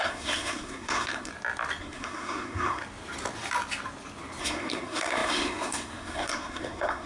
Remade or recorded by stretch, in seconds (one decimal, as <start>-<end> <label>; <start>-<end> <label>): 0.0-1.3 remade; 1.3-1.8 recorded; 1.8-2.8 remade; 2.8-4.4 recorded; 4.4-7.1 remade